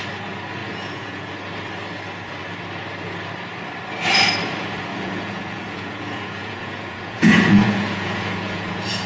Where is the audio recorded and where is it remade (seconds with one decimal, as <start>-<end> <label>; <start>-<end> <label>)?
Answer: 0.0-0.6 recorded; 0.6-1.3 remade; 1.3-4.9 recorded; 4.9-9.1 remade